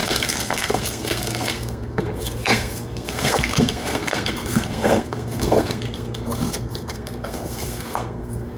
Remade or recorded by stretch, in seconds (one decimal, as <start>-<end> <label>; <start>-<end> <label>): 0.0-8.6 remade